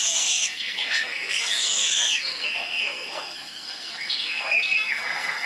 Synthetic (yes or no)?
yes